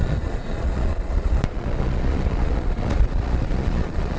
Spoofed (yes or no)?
yes